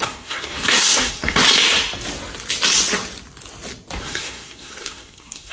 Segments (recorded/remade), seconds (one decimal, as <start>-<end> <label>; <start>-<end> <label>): 0.0-1.4 remade; 1.4-4.0 recorded; 4.0-5.5 remade